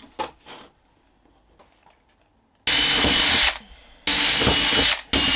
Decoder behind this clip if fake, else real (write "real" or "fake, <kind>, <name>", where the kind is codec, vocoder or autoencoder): real